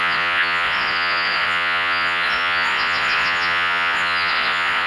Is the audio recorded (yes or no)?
no